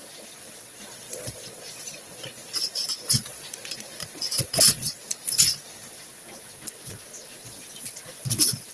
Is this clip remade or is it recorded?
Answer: remade